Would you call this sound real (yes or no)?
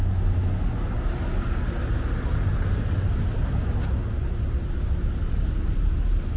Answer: yes